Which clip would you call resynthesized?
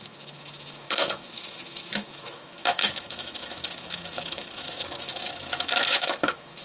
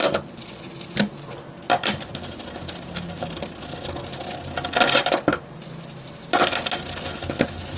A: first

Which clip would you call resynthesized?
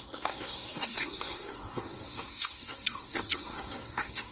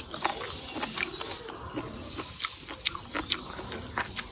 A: first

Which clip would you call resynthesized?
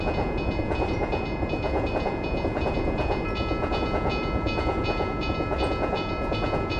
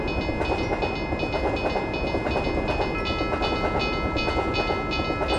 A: first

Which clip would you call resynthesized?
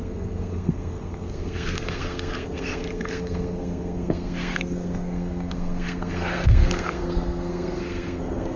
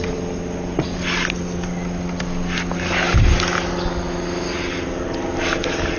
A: first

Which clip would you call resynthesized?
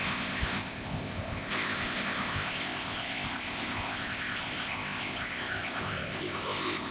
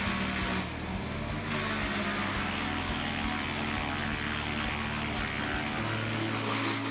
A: first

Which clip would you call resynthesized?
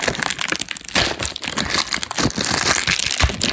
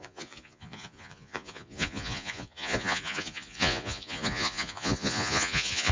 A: second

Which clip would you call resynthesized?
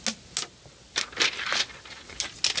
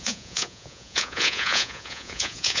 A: second